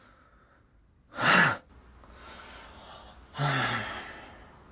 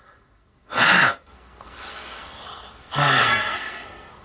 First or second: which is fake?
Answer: second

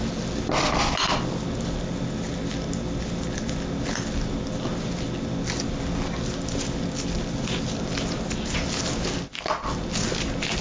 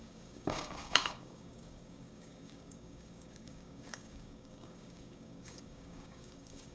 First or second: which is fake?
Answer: second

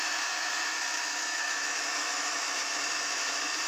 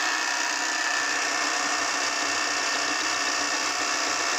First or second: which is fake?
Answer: first